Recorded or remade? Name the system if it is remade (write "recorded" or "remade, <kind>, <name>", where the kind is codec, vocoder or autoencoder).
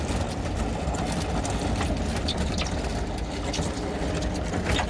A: recorded